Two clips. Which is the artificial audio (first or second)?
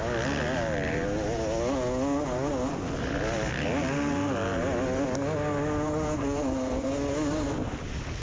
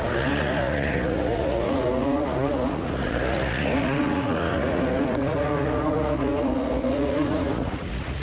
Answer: second